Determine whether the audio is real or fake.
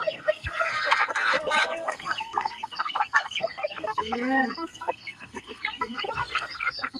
fake